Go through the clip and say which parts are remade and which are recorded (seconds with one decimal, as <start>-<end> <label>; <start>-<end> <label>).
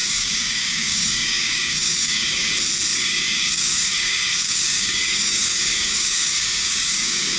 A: 0.0-2.5 remade; 2.5-2.9 recorded; 2.9-7.4 remade